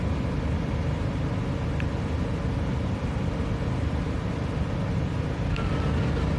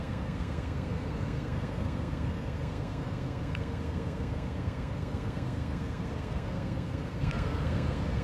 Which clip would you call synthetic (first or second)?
second